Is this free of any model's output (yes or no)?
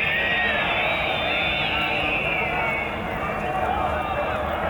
yes